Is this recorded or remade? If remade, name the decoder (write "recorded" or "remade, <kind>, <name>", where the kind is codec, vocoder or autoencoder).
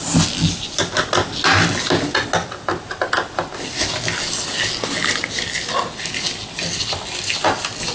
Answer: recorded